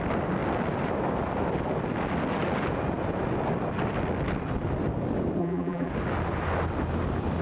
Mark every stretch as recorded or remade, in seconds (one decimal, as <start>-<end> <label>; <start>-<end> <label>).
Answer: 0.0-5.4 recorded; 5.4-5.9 remade; 5.9-7.4 recorded